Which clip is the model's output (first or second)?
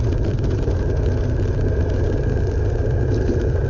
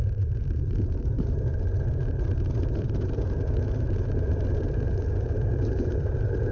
second